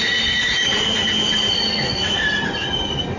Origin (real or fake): real